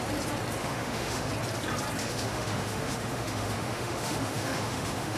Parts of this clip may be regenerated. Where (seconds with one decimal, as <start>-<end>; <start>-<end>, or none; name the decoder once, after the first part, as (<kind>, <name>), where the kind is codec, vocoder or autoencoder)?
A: 0.6-1.3 (autoencoder, DAC-VAE); 2.0-5.2